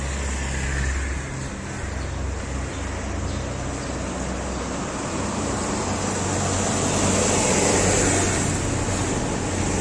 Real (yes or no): yes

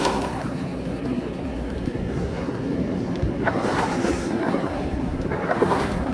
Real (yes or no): no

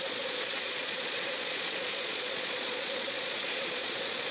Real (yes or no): no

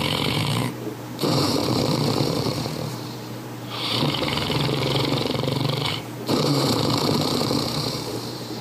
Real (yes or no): no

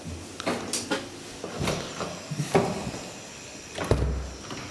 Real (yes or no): yes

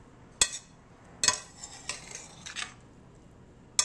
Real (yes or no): yes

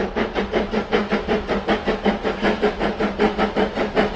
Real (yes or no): yes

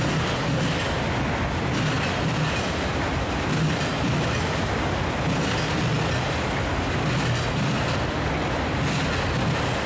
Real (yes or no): yes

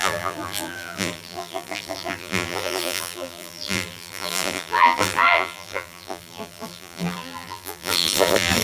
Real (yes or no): no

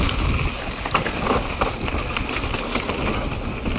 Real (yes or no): yes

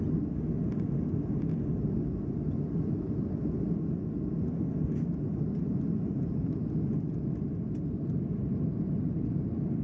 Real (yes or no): yes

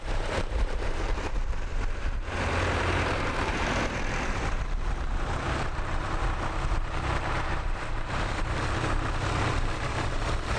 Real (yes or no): no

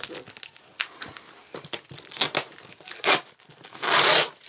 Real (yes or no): yes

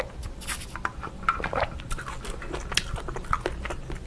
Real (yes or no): yes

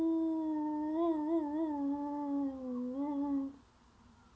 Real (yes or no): yes